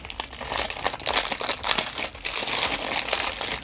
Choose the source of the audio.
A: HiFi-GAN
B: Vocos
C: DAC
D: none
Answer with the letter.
D